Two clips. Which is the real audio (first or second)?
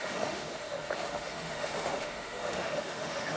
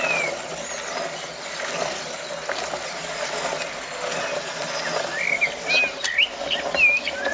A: second